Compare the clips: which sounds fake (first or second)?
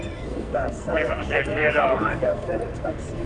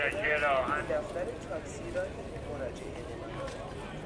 first